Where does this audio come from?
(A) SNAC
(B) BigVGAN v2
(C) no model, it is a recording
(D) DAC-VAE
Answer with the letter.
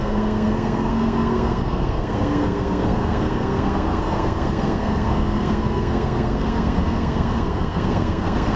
A